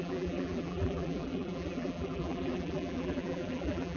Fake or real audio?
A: fake